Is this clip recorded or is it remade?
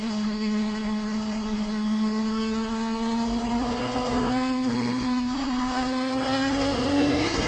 remade